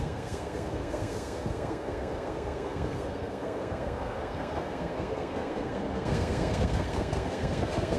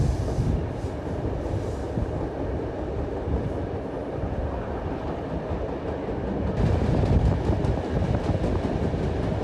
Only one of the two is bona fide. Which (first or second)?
second